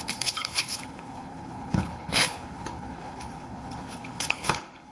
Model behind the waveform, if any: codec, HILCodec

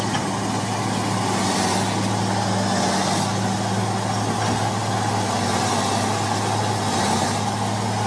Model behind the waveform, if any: none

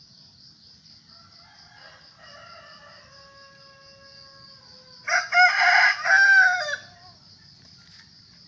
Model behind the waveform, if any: none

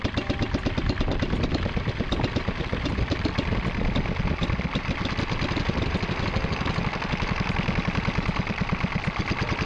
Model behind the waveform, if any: vocoder, BigVGAN v2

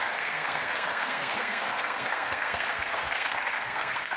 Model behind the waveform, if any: codec, SNAC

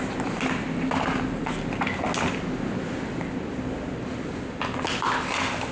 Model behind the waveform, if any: none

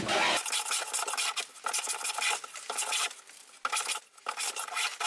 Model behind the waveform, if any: none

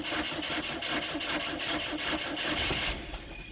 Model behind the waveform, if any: vocoder, BigVGAN v2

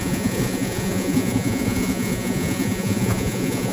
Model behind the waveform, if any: vocoder, Vocos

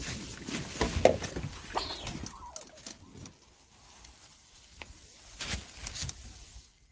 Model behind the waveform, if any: none